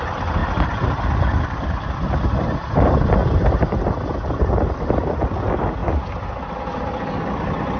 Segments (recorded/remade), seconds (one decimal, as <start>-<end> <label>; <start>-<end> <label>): 0.0-7.8 recorded